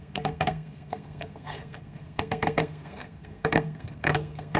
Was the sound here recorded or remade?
remade